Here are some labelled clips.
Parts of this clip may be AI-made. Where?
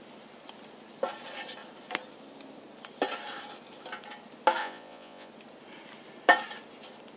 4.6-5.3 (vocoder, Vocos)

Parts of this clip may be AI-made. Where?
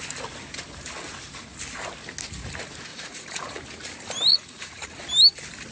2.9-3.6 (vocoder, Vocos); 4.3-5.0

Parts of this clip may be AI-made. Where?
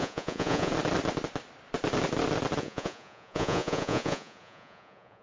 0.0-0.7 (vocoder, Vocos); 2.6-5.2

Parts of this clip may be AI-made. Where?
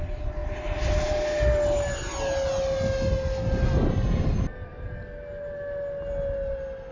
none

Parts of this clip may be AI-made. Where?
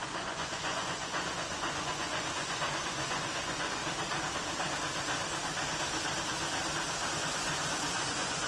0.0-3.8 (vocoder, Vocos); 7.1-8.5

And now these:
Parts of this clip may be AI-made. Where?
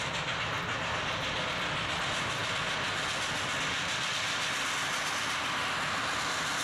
none